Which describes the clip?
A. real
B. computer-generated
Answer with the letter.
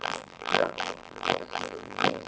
B